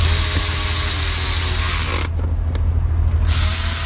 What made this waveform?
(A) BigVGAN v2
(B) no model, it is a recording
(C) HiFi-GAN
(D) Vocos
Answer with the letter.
B